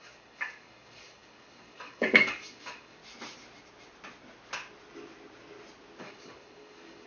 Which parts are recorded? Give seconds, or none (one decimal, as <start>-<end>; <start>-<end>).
3.0-6.0